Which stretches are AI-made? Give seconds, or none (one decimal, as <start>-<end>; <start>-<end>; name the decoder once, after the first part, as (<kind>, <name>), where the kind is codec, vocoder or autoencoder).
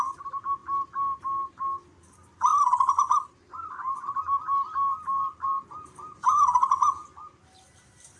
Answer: none